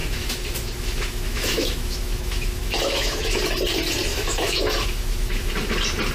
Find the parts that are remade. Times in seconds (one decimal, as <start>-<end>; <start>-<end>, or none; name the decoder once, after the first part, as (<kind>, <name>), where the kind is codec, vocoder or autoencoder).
0.0-3.4 (autoencoder, DAC-VAE); 4.1-5.5